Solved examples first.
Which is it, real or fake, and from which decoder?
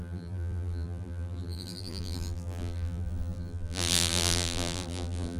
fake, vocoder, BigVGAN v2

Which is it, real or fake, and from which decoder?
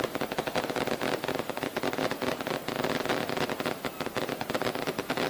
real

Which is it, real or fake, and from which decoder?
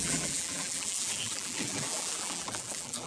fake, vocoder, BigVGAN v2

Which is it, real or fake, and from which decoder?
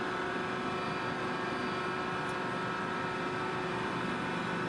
real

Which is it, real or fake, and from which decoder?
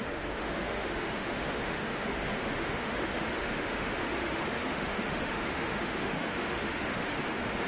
fake, autoencoder, DAC-VAE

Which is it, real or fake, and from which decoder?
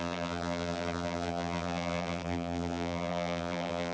fake, vocoder, BigVGAN v2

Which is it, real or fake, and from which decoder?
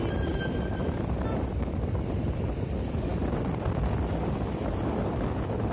fake, vocoder, BigVGAN v2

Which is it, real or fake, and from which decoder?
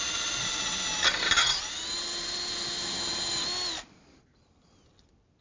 real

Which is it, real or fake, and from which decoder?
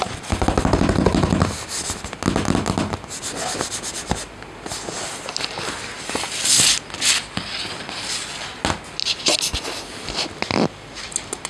real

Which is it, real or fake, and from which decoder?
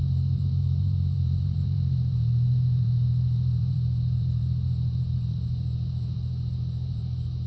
fake, vocoder, BigVGAN v2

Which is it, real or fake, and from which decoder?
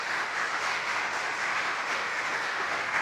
fake, autoencoder, DAC-VAE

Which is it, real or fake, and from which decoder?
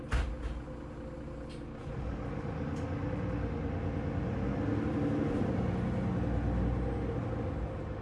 real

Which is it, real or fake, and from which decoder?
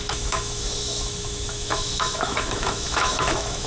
fake, autoencoder, DAC-VAE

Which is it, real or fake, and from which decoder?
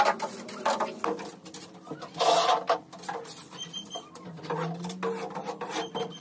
real